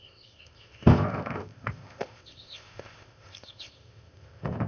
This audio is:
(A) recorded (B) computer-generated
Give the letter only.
B